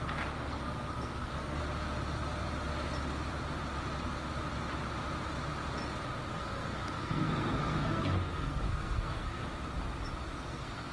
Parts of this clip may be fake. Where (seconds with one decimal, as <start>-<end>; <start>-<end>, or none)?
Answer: 0.0-1.6; 6.3-9.4; 10.4-10.9